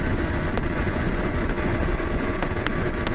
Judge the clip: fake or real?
fake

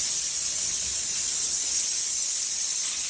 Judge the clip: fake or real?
fake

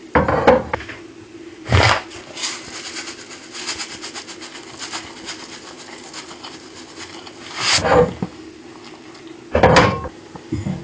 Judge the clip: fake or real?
real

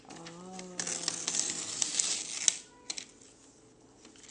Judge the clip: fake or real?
real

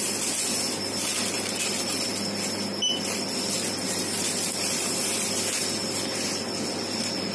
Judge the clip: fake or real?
real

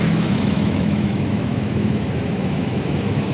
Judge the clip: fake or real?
fake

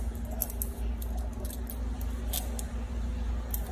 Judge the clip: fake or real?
real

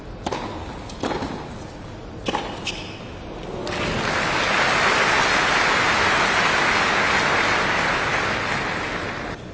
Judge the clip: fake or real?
real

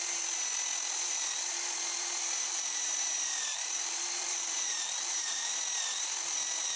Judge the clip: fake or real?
fake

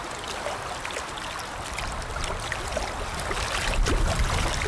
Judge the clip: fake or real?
real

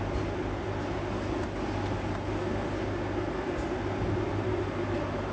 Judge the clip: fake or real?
real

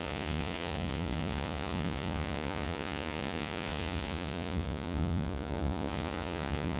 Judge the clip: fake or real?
fake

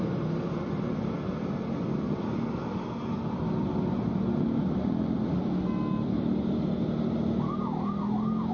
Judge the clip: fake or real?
real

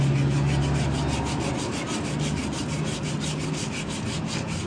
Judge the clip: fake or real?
real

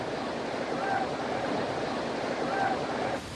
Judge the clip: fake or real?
real